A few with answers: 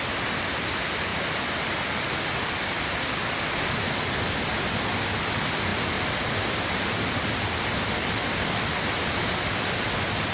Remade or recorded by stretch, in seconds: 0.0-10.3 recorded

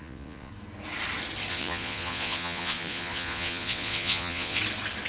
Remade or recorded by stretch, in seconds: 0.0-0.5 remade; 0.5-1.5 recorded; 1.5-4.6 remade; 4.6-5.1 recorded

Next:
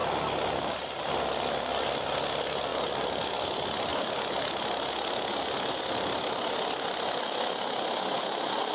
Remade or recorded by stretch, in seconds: 0.0-8.7 recorded

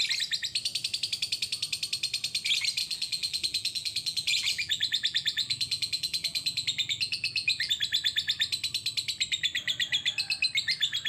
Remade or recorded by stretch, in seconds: 0.0-2.8 recorded; 2.8-7.7 remade; 7.7-11.1 recorded